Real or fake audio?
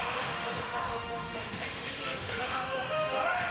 fake